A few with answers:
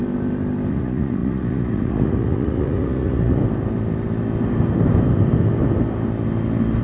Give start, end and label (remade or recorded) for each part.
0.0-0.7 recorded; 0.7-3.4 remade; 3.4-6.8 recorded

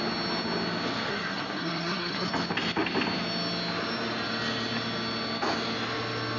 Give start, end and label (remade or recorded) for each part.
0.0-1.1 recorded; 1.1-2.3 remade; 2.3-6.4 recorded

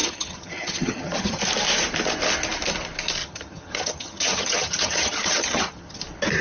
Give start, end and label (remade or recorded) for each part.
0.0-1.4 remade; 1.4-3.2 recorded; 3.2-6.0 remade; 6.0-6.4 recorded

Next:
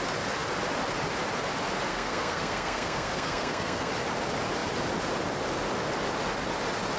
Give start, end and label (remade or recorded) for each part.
0.0-1.9 recorded; 1.9-3.9 remade; 3.9-7.0 recorded